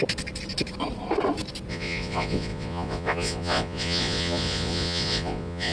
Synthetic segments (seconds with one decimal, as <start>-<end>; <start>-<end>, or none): 1.7-5.7